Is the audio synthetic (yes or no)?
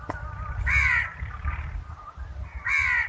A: no